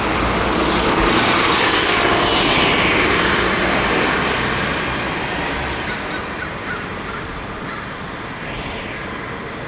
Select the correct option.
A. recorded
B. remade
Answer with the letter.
B